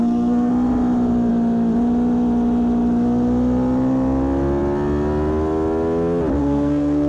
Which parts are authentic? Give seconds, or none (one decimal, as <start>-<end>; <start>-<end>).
0.5-6.4